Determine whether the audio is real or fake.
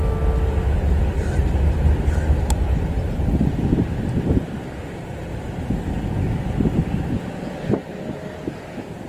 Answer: real